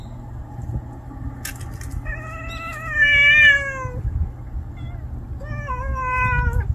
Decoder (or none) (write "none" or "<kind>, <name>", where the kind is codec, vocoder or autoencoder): none